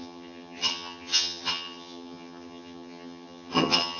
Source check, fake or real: fake